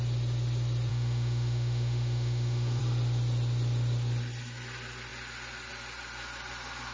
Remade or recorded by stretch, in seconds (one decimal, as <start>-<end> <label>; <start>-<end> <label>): 0.0-0.9 recorded; 0.9-2.8 remade; 2.8-6.9 recorded